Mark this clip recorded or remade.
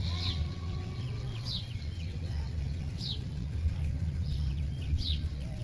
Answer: remade